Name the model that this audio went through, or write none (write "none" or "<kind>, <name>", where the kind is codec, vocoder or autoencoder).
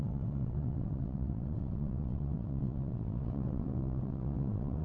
vocoder, WaveNeXt